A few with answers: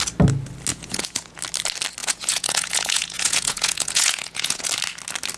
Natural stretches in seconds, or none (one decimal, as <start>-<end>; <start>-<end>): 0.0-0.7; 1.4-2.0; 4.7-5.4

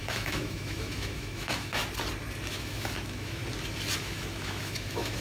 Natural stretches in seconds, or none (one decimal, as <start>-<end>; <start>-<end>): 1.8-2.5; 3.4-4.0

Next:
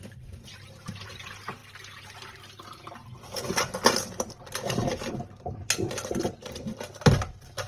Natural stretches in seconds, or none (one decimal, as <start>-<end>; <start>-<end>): 1.6-4.3

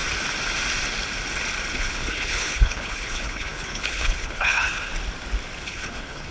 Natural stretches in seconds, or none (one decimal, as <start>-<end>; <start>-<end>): 0.0-1.7; 4.9-5.7